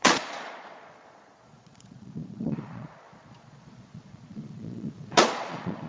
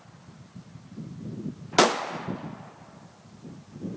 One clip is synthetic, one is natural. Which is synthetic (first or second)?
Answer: first